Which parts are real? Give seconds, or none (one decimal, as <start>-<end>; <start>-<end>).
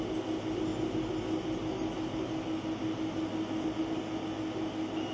0.0-5.1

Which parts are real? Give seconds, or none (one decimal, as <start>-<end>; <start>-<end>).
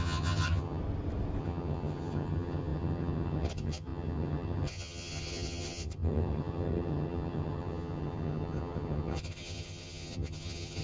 0.8-1.4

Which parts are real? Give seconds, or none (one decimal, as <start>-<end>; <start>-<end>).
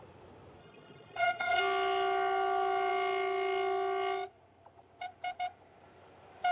0.0-0.6; 1.6-6.5